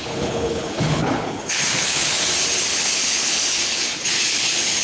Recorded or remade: remade